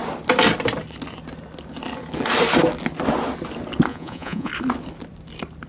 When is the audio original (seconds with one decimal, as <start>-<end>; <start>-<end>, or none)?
0.0-3.9; 4.5-5.7